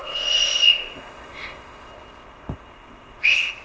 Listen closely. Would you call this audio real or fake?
fake